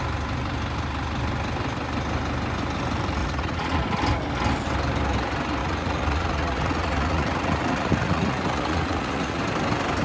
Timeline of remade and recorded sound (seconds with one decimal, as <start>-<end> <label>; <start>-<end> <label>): 0.0-3.2 recorded; 3.2-3.8 remade; 3.8-5.6 recorded; 5.6-9.4 remade; 9.4-10.0 recorded